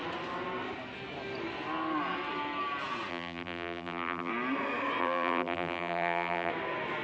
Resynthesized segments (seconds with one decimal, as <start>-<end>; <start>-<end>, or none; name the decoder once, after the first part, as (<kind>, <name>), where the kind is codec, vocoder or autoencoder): 3.1-4.3 (vocoder, BigVGAN v2); 5.0-6.5